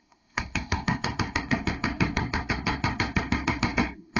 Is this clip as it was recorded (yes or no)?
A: no